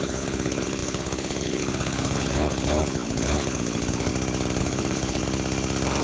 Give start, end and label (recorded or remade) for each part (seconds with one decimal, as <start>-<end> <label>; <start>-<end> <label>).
0.0-4.1 remade; 4.1-4.6 recorded; 4.6-5.2 remade; 5.2-6.0 recorded